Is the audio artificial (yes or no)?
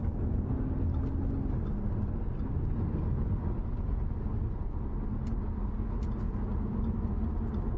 no